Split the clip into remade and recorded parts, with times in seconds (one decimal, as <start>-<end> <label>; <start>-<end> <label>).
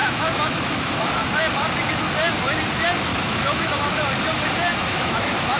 0.0-1.4 remade; 1.4-3.1 recorded; 3.1-3.9 remade; 3.9-4.7 recorded; 4.7-5.6 remade